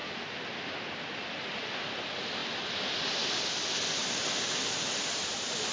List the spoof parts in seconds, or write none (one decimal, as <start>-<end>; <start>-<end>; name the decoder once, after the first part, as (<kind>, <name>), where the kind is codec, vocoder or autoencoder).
none